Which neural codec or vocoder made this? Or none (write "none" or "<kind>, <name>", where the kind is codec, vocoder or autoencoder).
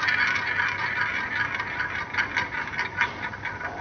none